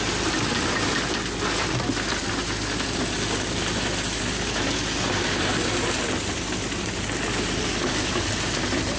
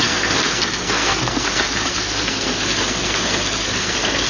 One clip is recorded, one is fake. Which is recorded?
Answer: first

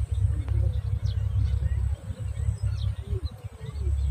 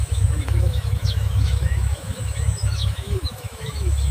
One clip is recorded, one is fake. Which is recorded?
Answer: first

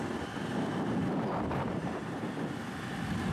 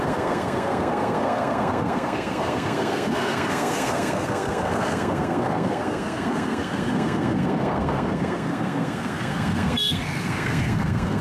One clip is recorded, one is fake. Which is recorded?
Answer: first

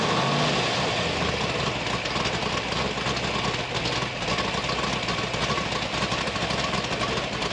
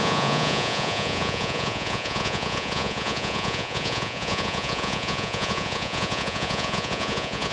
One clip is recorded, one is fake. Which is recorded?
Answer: first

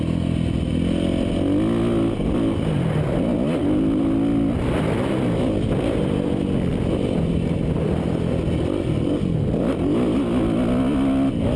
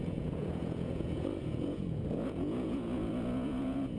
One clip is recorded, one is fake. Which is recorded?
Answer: first